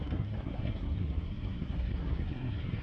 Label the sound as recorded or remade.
remade